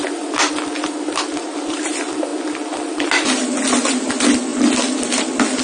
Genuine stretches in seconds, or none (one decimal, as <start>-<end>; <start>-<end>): 0.0-5.6